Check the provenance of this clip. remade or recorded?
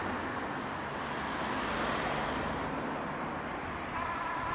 remade